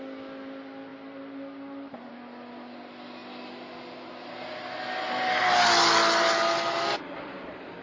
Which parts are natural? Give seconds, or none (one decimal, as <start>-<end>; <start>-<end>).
0.0-7.8

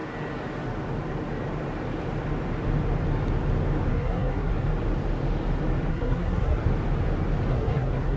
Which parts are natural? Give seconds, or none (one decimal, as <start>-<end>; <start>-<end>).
0.0-3.9; 4.5-5.9; 6.6-7.5

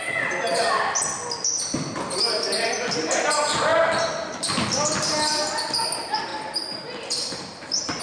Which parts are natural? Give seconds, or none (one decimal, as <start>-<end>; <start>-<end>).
0.0-8.0

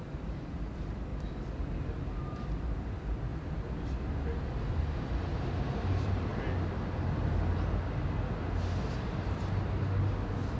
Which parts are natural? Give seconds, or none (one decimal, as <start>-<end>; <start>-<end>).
1.1-2.2; 3.3-4.7; 6.3-10.6

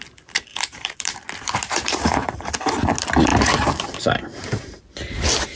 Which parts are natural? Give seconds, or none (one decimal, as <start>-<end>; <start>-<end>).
0.0-0.5; 2.5-3.3; 4.8-5.6